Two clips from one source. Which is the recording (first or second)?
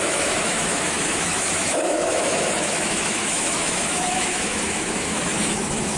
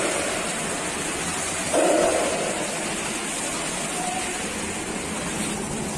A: second